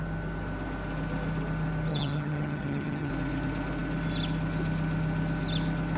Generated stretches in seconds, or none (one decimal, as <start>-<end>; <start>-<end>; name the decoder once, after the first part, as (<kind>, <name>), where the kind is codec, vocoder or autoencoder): 1.9-3.1 (vocoder, HiFi-GAN)